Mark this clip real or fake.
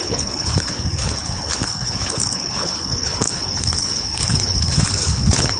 fake